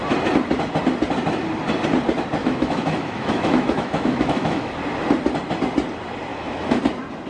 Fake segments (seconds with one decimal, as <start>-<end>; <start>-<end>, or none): 2.4-4.7; 6.3-6.8